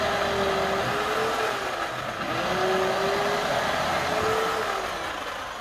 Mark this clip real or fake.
real